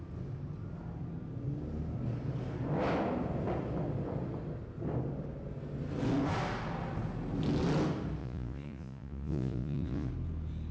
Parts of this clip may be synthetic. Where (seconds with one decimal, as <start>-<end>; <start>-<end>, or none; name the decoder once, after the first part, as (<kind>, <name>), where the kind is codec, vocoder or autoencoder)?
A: 8.2-10.1 (vocoder, Vocos)